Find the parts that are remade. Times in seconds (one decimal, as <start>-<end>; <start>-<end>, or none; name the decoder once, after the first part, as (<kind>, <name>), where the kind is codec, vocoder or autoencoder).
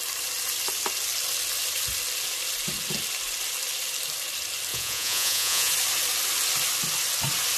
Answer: 4.7-5.7 (vocoder, Vocos)